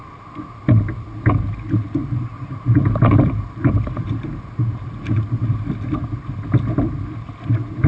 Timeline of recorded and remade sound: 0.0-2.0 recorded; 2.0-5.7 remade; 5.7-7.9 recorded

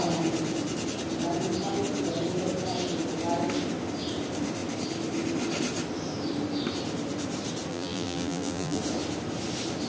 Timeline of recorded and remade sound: 0.0-7.7 recorded; 7.7-8.8 remade; 8.8-9.9 recorded

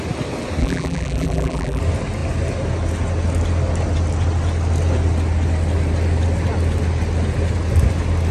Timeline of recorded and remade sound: 0.0-0.6 recorded; 0.6-1.8 remade; 1.8-8.3 recorded